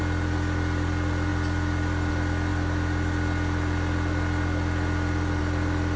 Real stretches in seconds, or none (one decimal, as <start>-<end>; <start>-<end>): 0.0-6.0